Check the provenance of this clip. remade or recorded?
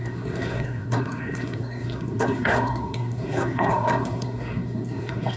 remade